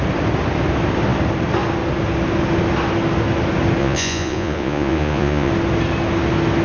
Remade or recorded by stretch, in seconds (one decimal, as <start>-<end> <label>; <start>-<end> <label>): 0.0-3.8 recorded; 3.8-5.5 remade; 5.5-6.6 recorded